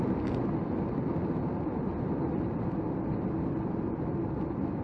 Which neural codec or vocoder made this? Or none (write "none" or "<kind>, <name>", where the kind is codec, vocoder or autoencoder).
none